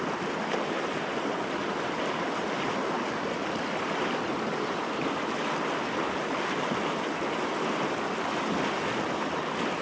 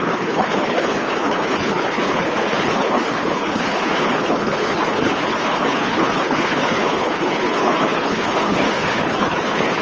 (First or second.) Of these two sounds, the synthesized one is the second